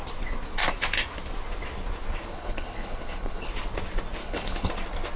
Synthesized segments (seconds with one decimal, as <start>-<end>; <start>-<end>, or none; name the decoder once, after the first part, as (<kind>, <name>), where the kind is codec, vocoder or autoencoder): 2.3-3.5 (codec, HILCodec); 4.2-4.7